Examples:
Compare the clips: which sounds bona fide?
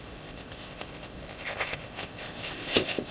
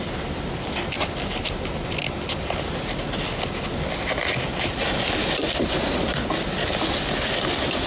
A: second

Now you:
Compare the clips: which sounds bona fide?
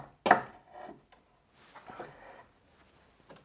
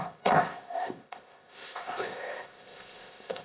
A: first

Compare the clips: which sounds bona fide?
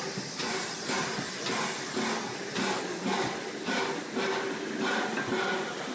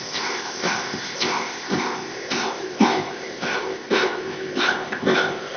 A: first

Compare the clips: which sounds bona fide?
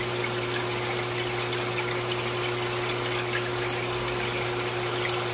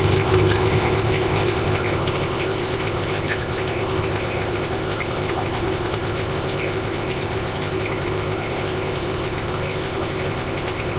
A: first